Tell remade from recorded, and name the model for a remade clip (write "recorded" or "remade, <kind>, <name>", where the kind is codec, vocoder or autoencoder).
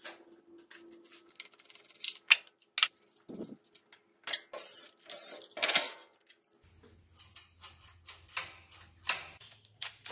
recorded